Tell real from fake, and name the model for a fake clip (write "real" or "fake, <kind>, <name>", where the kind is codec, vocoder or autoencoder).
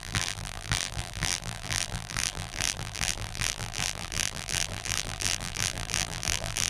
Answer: fake, vocoder, BigVGAN v2